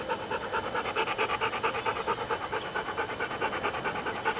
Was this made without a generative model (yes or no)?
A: yes